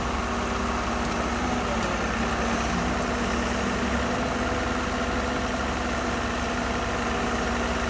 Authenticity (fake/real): real